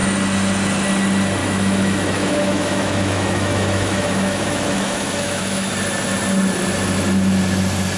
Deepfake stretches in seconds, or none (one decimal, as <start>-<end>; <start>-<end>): 1.4-5.7